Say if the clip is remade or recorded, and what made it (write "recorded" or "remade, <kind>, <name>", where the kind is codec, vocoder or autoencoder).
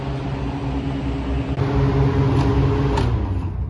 recorded